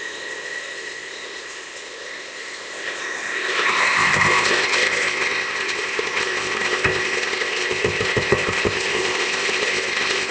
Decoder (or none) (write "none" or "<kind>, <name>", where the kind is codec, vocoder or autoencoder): codec, ZipCodec